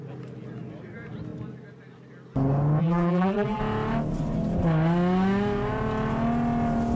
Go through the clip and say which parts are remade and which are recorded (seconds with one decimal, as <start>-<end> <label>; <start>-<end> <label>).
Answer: 0.0-2.8 recorded; 2.8-3.6 remade; 3.6-6.9 recorded